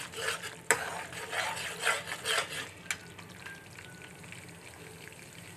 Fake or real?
real